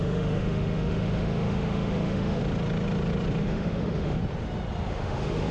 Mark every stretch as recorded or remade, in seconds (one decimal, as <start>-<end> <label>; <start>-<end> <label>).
0.0-2.4 remade; 2.4-3.4 recorded; 3.4-4.2 remade; 4.2-4.9 recorded; 4.9-5.5 remade